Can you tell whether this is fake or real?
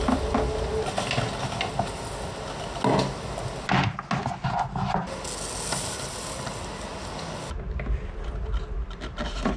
real